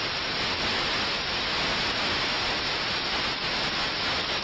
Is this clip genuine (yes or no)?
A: yes